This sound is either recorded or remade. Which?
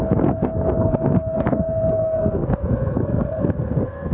remade